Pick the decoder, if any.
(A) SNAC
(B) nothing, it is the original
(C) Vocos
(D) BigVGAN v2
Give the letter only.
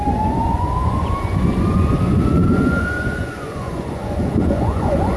C